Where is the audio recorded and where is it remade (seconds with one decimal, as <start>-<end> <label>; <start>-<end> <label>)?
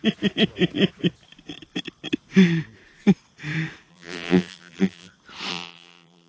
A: 0.0-3.9 recorded; 3.9-5.1 remade; 5.1-5.5 recorded; 5.5-6.3 remade